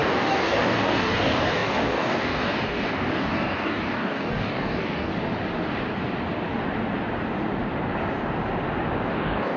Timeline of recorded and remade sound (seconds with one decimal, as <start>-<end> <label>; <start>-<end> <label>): 0.0-5.1 remade; 5.1-9.1 recorded; 9.1-9.6 remade